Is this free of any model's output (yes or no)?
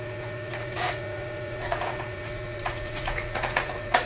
no